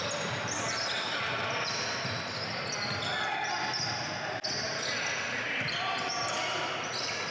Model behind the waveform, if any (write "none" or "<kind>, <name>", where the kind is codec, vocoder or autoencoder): none